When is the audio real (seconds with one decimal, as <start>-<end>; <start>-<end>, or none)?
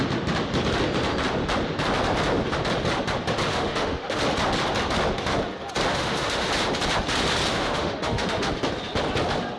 0.0-3.5; 4.2-5.9; 6.5-7.5; 8.5-9.6